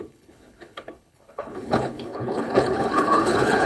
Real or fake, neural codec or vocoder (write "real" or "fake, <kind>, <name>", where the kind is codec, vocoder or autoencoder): fake, codec, HILCodec